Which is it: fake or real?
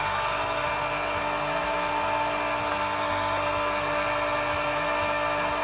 real